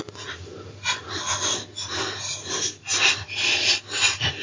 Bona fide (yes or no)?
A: yes